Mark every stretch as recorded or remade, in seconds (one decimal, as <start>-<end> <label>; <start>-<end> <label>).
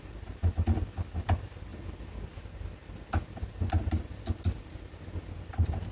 0.0-5.9 recorded